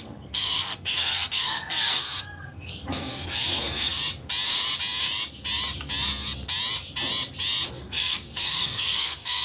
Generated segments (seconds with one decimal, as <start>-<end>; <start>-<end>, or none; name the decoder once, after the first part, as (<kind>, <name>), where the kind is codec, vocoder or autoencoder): 0.0-4.0 (codec, SNAC); 7.7-9.4